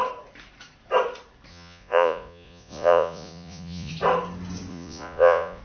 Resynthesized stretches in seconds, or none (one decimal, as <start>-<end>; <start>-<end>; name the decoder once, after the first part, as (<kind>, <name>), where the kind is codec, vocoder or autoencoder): 1.5-3.9 (vocoder, Vocos); 4.7-5.6